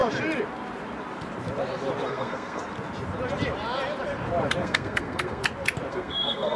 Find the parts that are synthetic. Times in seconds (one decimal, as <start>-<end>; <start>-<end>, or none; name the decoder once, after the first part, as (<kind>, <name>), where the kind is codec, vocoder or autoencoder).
2.1-2.6 (codec, SNAC); 4.6-5.4; 5.9-6.6